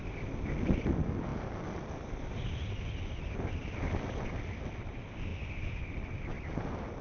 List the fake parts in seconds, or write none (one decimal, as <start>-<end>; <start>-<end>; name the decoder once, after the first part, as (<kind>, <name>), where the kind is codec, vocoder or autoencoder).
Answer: none